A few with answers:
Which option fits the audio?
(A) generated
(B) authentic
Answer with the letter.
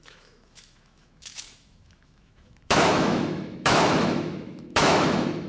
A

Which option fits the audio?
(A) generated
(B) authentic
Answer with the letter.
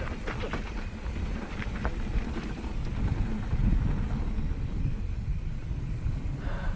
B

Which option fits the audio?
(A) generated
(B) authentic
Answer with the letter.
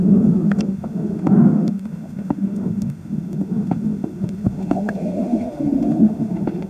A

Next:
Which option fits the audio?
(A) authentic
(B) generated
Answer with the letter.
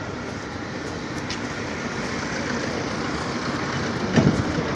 A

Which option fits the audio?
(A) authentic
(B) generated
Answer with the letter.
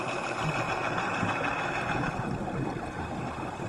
A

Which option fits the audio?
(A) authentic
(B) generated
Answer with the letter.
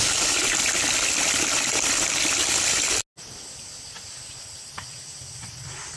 A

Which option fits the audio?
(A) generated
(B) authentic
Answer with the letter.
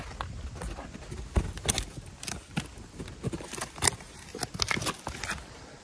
B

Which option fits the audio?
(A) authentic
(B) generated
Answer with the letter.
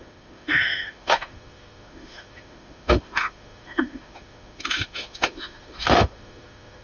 B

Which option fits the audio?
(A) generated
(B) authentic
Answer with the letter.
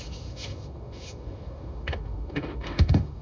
A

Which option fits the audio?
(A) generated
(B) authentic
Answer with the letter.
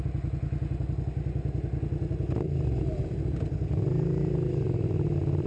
B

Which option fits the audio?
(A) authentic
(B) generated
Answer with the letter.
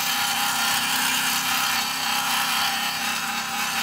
A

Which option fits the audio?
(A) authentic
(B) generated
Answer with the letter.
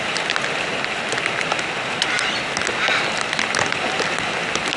A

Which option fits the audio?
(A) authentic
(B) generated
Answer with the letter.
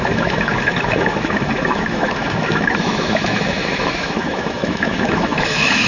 B